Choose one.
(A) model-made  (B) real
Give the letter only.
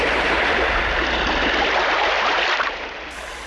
A